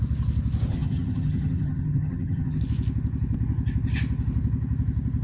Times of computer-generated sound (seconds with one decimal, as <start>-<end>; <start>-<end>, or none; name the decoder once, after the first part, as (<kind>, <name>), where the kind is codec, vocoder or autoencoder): 0.7-2.6 (vocoder, HiFi-GAN)